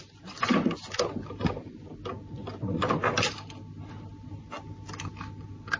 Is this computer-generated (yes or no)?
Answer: no